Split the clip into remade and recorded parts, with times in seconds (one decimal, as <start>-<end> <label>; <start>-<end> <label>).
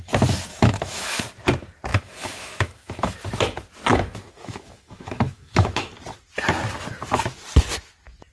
0.0-0.5 recorded; 0.5-1.2 remade; 1.2-1.9 recorded; 1.9-3.2 remade; 3.2-3.9 recorded; 3.9-5.9 remade; 5.9-8.3 recorded